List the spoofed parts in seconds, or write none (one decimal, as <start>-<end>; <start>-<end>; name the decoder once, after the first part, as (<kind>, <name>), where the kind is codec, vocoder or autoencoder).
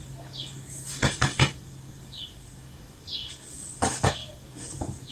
0.0-5.1 (codec, DAC)